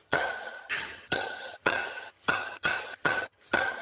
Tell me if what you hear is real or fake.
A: fake